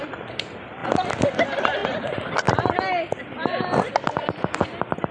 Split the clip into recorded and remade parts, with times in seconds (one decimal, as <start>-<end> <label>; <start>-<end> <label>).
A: 0.0-5.1 recorded